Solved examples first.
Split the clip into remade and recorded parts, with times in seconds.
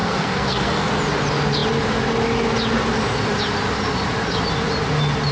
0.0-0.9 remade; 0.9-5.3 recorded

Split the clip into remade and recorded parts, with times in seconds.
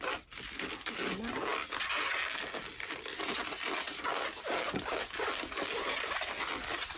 0.0-7.0 recorded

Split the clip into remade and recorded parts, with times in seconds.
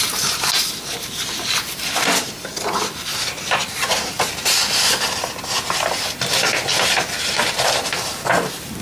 0.0-3.6 recorded; 3.6-4.3 remade; 4.3-8.8 recorded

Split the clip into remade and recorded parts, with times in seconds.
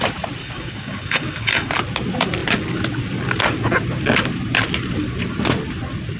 0.0-0.4 recorded; 0.4-1.7 remade; 1.7-6.2 recorded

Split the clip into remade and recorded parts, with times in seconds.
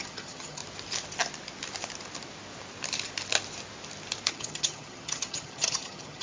0.0-0.6 remade; 0.6-4.3 recorded; 4.3-6.2 remade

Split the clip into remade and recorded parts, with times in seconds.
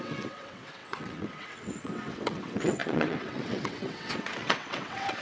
0.0-5.2 remade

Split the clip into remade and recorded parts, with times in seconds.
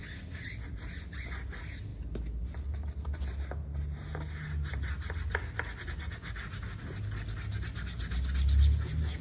0.0-9.2 recorded